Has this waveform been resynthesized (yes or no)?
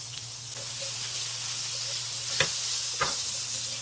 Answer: no